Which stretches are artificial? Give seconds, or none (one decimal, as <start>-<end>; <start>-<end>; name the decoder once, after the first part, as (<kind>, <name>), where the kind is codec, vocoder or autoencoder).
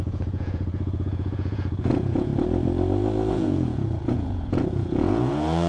0.0-2.3 (vocoder, Vocos); 3.3-5.7